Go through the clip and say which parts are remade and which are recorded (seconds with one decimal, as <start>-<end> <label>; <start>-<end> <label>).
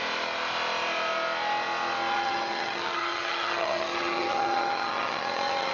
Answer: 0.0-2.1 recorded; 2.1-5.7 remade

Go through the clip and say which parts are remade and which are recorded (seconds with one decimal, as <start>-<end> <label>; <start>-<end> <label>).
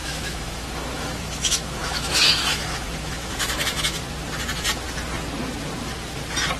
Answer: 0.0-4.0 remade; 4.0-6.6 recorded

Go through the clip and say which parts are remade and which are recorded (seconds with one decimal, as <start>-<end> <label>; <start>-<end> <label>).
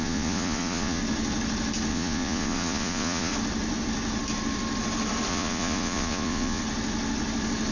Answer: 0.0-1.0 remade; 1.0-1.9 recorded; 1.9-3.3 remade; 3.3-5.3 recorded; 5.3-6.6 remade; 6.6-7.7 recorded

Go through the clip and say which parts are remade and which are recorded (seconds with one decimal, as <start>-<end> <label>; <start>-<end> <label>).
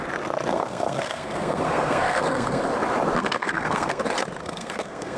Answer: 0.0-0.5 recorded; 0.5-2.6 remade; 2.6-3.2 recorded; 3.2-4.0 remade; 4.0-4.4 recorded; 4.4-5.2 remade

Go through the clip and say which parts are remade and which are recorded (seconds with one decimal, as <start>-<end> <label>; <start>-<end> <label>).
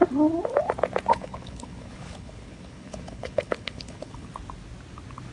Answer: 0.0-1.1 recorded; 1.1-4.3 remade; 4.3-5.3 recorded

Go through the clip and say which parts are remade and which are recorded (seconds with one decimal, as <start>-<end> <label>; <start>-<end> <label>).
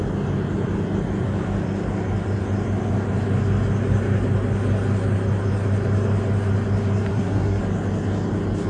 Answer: 0.0-7.1 recorded; 7.1-7.6 remade; 7.6-8.7 recorded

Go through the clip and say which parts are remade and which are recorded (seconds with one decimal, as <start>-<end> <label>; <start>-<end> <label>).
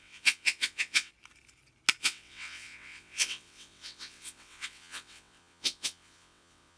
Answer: 0.0-1.1 remade; 1.1-2.0 recorded; 2.0-6.8 remade